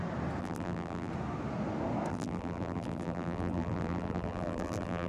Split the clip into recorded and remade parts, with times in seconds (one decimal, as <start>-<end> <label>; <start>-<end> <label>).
0.0-0.4 recorded; 0.4-1.1 remade; 1.1-2.1 recorded; 2.1-5.1 remade